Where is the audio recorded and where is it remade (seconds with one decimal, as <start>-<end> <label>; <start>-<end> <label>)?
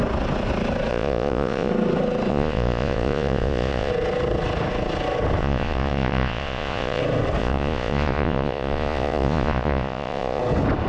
0.0-0.9 recorded; 0.9-1.7 remade; 1.7-2.3 recorded; 2.3-3.9 remade; 3.9-5.4 recorded; 5.4-7.0 remade; 7.0-7.4 recorded; 7.4-10.4 remade; 10.4-10.9 recorded